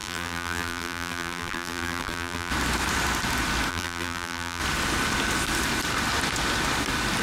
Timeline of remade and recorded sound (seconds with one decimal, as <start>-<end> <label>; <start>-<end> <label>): 0.0-2.5 remade; 2.5-3.7 recorded; 3.7-4.6 remade; 4.6-7.2 recorded